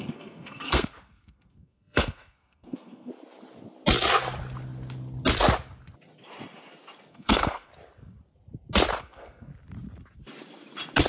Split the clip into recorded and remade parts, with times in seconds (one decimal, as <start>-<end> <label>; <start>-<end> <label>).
0.0-3.1 remade; 3.1-7.1 recorded; 7.1-7.7 remade; 7.7-9.0 recorded; 9.0-9.5 remade; 9.5-11.1 recorded